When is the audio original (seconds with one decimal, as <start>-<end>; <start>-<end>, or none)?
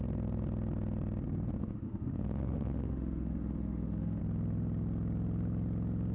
0.0-1.6; 4.2-6.1